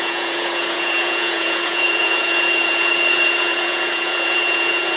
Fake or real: fake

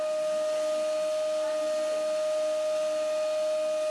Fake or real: real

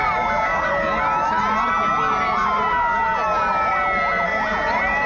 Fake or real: real